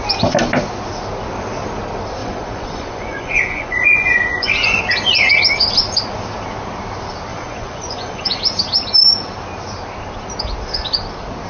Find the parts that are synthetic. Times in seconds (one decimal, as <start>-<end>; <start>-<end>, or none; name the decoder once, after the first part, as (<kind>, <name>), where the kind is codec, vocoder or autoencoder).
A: 2.2-4.8 (vocoder, Vocos); 7.3-8.4